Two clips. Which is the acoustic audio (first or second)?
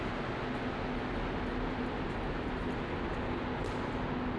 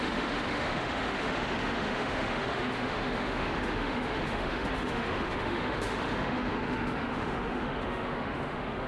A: first